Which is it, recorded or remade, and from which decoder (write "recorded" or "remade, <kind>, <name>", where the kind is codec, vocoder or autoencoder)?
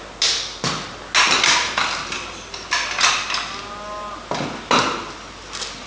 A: recorded